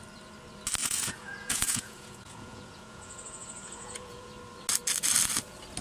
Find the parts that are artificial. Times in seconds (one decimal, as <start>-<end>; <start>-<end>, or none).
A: 0.8-4.3